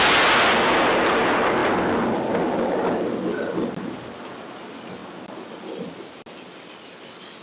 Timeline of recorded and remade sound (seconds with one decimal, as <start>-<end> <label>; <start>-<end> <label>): 0.0-7.4 recorded